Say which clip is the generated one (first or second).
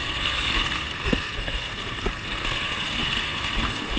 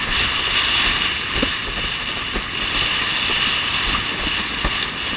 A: first